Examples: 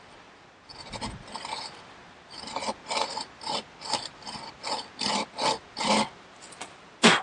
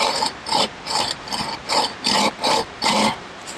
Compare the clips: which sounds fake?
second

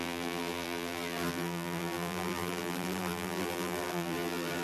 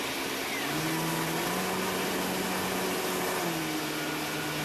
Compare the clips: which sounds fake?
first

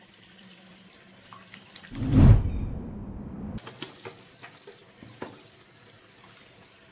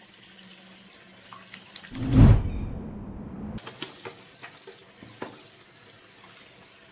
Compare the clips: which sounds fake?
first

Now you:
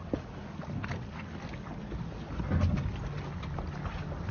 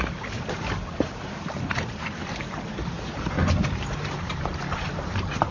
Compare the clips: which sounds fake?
second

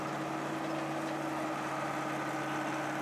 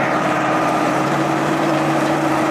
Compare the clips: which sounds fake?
second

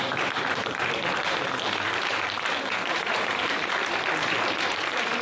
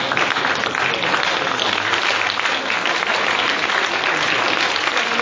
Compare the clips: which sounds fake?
first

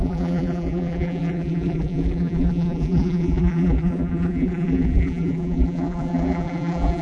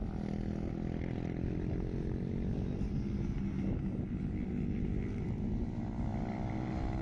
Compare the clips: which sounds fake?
first